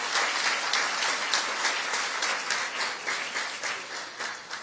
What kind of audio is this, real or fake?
real